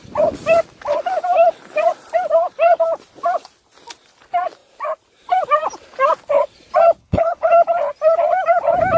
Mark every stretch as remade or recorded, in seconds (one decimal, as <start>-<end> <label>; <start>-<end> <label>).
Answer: 0.0-7.0 recorded; 7.0-7.5 remade; 7.5-9.0 recorded